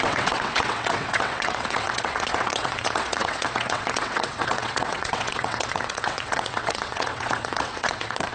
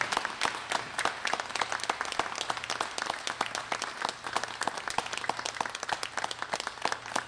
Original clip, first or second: second